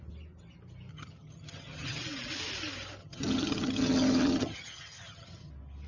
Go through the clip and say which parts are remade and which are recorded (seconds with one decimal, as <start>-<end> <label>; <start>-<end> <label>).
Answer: 0.0-0.9 recorded; 0.9-2.0 remade; 2.0-3.0 recorded; 3.0-5.5 remade; 5.5-5.9 recorded